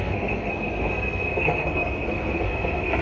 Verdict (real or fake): fake